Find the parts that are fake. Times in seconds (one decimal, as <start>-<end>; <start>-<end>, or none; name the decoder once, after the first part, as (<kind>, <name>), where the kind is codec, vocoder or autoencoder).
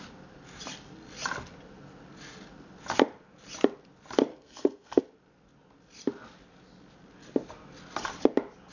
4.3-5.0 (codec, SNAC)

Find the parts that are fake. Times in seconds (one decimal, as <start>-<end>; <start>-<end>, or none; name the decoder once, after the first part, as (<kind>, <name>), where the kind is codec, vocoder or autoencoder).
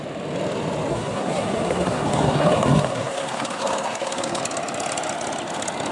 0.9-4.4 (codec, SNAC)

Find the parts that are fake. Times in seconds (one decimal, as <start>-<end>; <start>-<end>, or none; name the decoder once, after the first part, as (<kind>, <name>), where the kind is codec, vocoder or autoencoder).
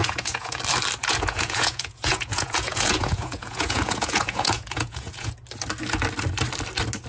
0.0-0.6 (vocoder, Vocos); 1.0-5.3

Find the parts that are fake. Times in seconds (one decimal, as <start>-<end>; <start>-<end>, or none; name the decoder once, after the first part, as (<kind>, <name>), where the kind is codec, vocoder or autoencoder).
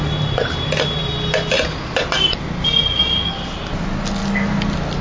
none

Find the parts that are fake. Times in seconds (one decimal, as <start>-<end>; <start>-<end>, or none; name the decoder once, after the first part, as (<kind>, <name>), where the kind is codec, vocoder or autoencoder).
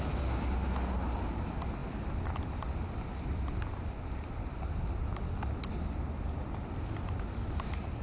none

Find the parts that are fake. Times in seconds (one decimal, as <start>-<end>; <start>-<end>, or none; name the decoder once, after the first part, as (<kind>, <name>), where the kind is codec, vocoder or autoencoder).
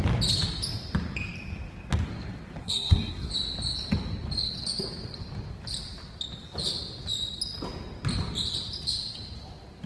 2.6-3.3 (codec, SNAC)